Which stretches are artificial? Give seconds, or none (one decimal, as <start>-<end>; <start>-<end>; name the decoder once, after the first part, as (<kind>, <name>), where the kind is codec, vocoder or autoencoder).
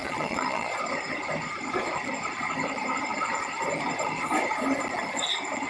0.0-0.8 (vocoder, Vocos)